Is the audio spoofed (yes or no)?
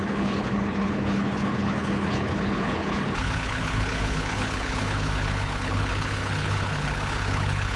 yes